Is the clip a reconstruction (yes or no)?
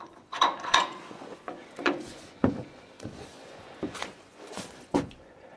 yes